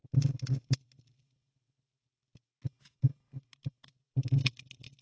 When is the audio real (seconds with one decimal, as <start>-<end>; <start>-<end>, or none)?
0.0-5.0